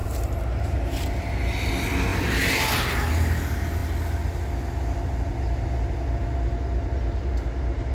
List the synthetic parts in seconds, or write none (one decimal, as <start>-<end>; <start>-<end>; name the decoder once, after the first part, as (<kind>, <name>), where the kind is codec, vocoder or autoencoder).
0.0-1.7 (vocoder, BigVGAN v2)